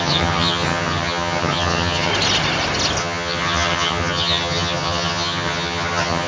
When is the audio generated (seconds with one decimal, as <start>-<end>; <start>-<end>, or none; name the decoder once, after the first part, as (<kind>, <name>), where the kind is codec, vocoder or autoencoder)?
0.0-2.1 (vocoder, HiFi-GAN); 3.0-6.3